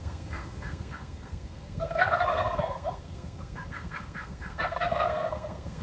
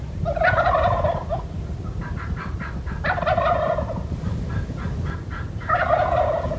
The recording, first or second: second